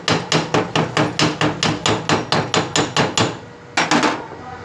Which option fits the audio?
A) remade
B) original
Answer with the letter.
B